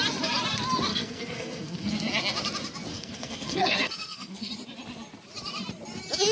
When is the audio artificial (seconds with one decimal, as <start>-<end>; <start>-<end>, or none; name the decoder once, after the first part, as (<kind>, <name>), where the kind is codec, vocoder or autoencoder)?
0.9-1.9 (codec, SNAC); 2.9-4.5